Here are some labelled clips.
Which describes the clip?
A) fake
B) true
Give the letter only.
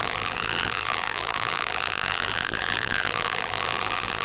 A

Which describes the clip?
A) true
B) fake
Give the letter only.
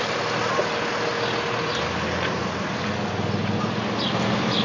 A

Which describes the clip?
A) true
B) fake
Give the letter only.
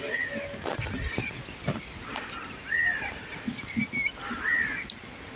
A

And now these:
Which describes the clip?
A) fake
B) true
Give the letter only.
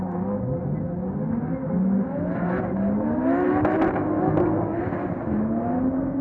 B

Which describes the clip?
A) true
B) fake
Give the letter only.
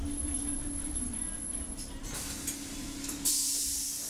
B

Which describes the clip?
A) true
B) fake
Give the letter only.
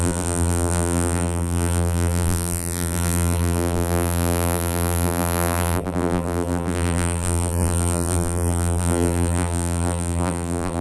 B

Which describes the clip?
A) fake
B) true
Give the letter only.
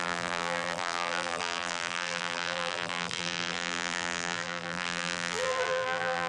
A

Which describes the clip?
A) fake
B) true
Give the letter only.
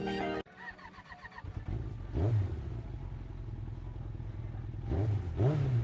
B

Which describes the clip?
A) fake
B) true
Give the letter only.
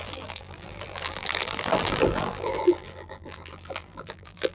A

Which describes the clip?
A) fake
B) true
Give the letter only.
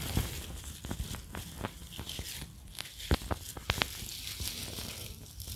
B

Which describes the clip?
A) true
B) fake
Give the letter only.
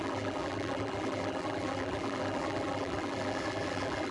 B